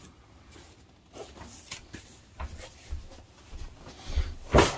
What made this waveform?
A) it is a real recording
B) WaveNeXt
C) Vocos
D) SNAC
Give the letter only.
A